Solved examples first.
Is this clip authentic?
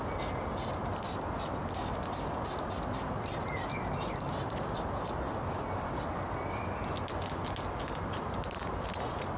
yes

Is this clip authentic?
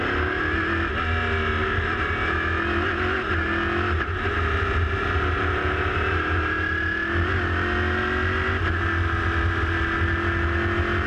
yes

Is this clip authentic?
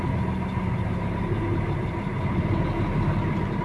yes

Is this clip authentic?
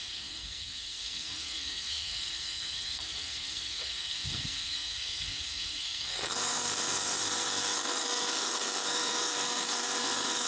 no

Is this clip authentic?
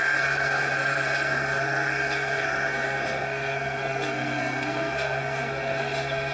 no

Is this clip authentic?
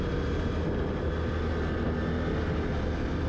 yes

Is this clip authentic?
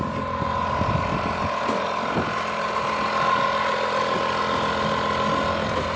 yes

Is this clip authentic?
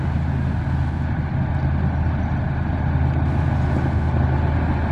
yes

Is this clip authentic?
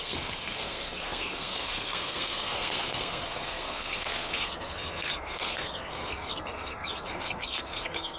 no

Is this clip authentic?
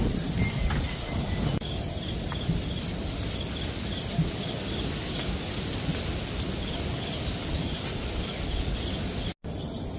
yes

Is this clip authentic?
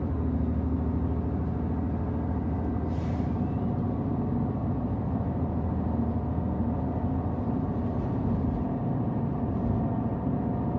yes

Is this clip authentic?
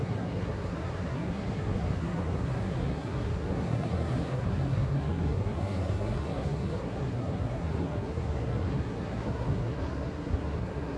no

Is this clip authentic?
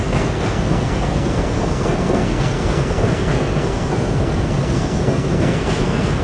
no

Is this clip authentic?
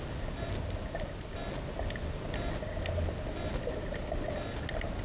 yes